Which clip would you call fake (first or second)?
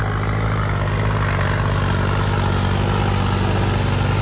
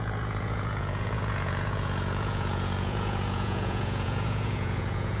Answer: second